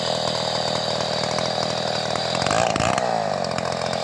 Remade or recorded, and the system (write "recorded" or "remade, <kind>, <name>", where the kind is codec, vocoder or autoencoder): recorded